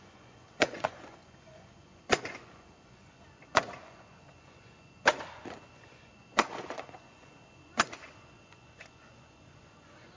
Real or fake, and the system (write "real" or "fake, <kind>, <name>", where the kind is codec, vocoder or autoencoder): fake, vocoder, Vocos